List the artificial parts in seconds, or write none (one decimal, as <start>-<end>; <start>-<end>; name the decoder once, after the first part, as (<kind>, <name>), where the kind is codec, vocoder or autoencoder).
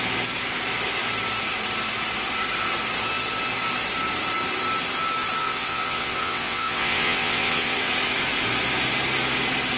5.4-7.9 (vocoder, WaveNeXt)